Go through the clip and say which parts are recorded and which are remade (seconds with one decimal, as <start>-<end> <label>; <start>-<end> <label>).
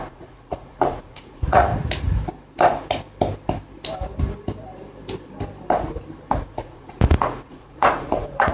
0.0-1.7 remade; 1.7-6.4 recorded; 6.4-8.5 remade